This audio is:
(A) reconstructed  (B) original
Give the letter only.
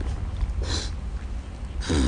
B